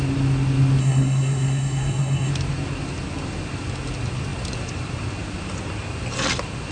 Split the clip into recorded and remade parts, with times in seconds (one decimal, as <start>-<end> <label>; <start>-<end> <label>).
0.0-0.8 recorded; 0.8-2.3 remade; 2.3-6.7 recorded